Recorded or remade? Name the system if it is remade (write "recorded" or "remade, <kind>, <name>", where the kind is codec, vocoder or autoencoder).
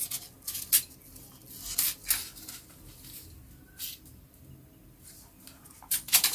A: recorded